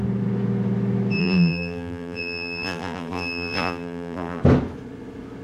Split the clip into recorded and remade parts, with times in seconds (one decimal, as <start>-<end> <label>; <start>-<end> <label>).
0.0-1.2 recorded; 1.2-4.4 remade; 4.4-5.4 recorded